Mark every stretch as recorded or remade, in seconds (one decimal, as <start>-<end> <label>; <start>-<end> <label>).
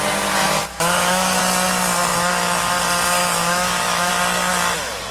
0.0-0.6 recorded; 0.6-1.4 remade; 1.4-2.1 recorded; 2.1-2.7 remade; 2.7-3.2 recorded; 3.2-4.1 remade; 4.1-5.1 recorded